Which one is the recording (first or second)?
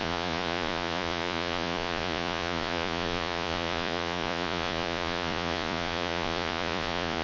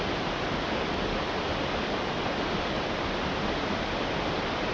second